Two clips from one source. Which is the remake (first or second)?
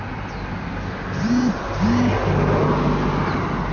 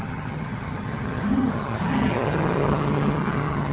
second